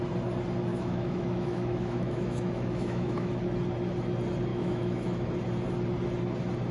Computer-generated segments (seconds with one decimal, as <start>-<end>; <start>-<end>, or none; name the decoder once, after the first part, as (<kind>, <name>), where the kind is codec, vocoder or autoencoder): 0.7-3.3 (autoencoder, DAC-VAE); 4.5-5.3